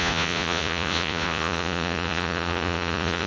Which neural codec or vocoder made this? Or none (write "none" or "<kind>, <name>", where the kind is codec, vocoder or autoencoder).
vocoder, Vocos